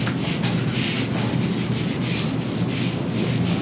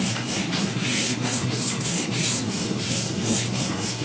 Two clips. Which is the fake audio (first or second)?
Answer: second